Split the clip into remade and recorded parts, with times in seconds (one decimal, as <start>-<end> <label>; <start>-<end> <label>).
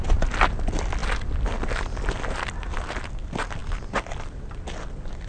0.0-5.3 recorded